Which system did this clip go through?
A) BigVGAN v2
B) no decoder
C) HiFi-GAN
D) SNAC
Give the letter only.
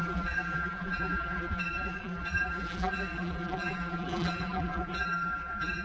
A